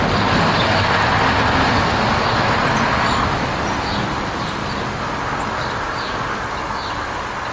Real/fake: real